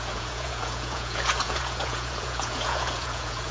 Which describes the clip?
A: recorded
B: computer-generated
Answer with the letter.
B